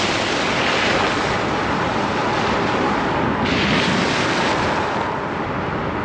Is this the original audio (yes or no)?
yes